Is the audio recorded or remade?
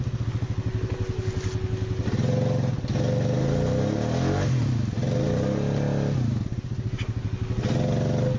recorded